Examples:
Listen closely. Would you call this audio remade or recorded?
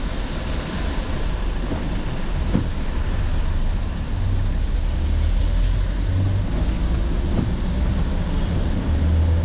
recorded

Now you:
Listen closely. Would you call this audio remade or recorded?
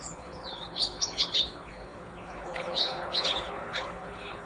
remade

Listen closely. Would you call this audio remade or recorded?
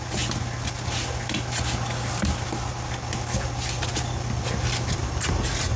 recorded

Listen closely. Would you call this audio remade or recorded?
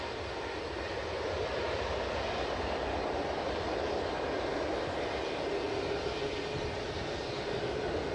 recorded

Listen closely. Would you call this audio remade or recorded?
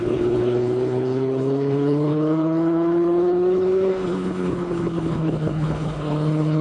remade